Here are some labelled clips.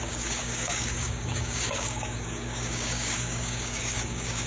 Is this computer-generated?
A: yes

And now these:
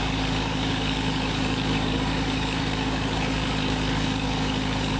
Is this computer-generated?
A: yes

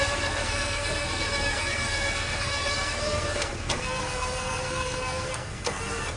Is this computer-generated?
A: yes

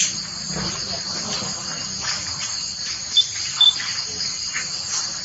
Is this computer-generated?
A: no